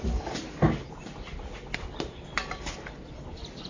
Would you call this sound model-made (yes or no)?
no